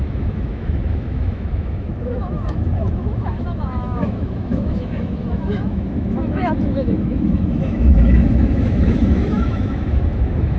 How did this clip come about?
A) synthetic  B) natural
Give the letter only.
A